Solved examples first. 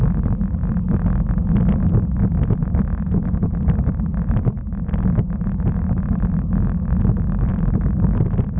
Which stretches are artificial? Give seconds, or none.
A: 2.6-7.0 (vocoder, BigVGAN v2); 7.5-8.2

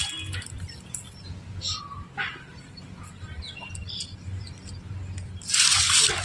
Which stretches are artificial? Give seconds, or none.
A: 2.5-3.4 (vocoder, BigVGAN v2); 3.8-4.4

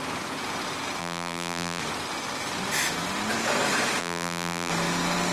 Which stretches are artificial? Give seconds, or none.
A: 1.0-1.8 (vocoder, BigVGAN v2); 4.0-4.7

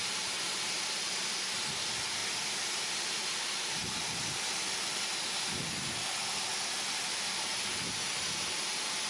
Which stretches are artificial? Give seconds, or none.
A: 6.5-7.7 (vocoder, BigVGAN v2)

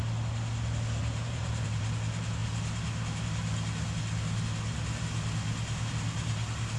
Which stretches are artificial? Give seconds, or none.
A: 1.0-1.9 (vocoder, BigVGAN v2)

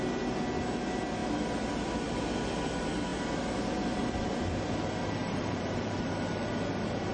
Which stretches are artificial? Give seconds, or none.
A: 5.2-6.5 (vocoder, BigVGAN v2)